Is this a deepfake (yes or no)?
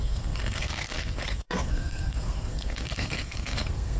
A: yes